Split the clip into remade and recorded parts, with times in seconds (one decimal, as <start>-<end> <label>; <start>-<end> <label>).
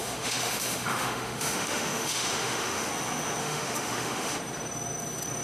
0.0-2.9 remade; 2.9-3.4 recorded; 3.4-4.4 remade; 4.4-5.4 recorded